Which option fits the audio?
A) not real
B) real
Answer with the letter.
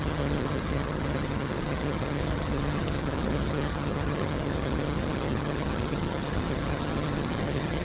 A